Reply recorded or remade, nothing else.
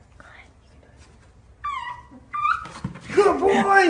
recorded